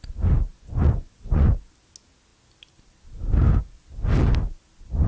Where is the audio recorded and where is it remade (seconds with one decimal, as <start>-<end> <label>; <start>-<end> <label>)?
0.0-0.5 recorded; 0.5-1.5 remade; 1.5-5.1 recorded